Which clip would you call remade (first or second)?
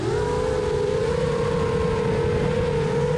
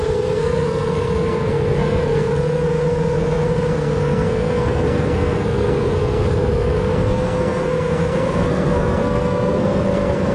second